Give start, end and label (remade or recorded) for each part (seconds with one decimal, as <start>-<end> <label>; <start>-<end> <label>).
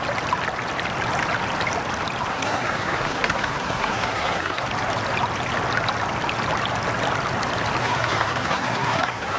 0.0-2.3 recorded; 2.3-4.7 remade; 4.7-7.8 recorded; 7.8-9.4 remade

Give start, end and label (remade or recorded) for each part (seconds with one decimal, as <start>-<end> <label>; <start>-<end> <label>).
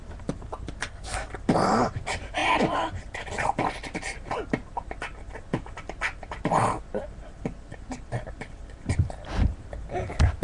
0.0-0.8 recorded; 0.8-1.3 remade; 1.3-10.4 recorded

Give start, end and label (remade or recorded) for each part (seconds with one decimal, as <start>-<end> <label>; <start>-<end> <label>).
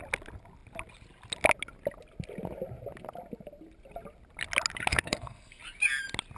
0.0-4.9 recorded; 4.9-5.6 remade; 5.6-6.4 recorded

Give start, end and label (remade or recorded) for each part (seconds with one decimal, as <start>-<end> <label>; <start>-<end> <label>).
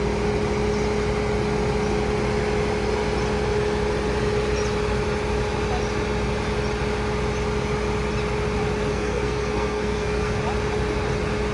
0.0-8.9 recorded; 8.9-10.4 remade; 10.4-11.5 recorded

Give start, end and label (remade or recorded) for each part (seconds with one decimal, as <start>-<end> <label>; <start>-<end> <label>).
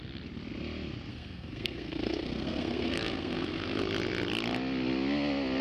0.0-1.1 recorded; 1.1-3.8 remade; 3.8-5.6 recorded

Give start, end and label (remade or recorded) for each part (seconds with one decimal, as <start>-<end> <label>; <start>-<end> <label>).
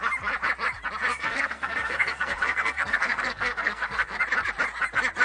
0.0-1.1 recorded; 1.1-4.2 remade; 4.2-5.2 recorded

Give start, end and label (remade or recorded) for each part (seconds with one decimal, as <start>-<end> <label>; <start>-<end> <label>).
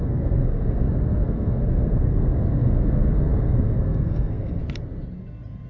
0.0-4.6 remade; 4.6-5.7 recorded